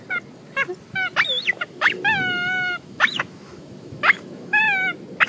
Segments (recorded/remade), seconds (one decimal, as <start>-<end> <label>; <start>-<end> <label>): 0.0-1.5 recorded; 1.5-4.6 remade; 4.6-5.3 recorded